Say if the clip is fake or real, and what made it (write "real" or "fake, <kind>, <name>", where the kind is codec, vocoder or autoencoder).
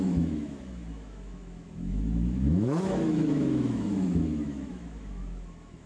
fake, autoencoder, DAC-VAE